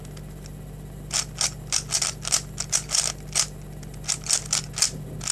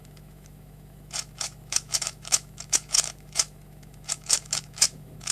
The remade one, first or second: second